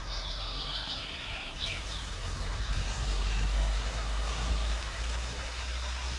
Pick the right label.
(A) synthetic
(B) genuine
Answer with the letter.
A